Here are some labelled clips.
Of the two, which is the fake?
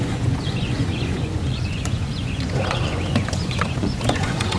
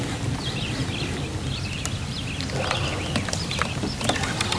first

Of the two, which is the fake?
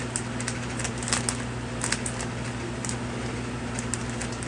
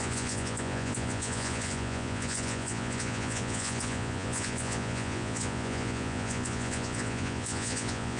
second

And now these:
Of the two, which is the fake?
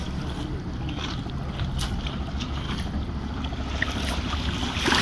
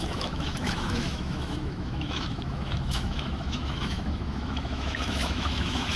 second